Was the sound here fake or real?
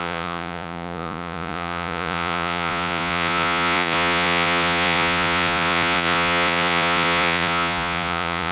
fake